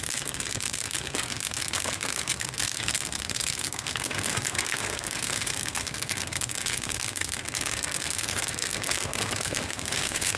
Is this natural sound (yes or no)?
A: no